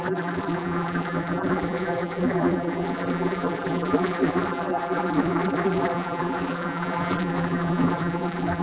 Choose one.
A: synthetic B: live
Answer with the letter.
A